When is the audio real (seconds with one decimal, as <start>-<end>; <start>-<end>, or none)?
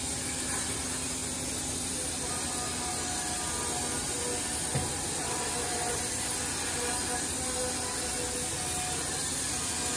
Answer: 0.0-4.7; 6.1-10.0